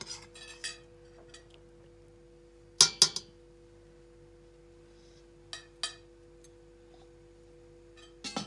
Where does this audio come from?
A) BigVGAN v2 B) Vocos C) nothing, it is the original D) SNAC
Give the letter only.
C